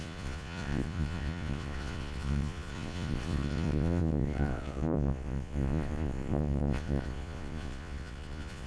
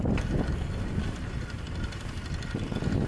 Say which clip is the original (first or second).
second